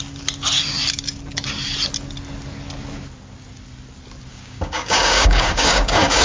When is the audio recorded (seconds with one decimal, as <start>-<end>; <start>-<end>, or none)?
0.0-4.3